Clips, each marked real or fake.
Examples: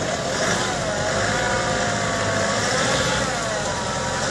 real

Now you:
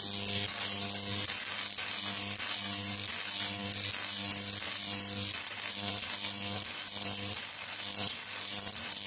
real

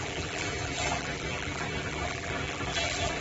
fake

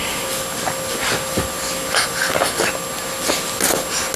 real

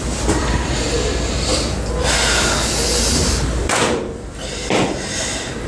fake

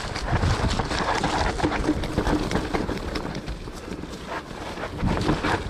real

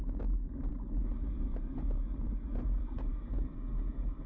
fake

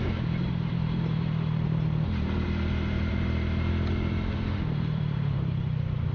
fake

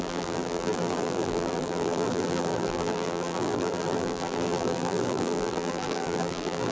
fake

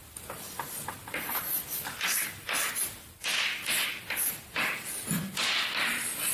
real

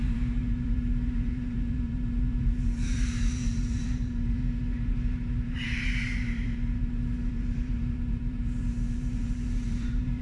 fake